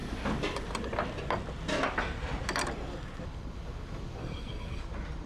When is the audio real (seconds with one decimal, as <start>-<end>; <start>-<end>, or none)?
0.0-4.2; 4.8-5.3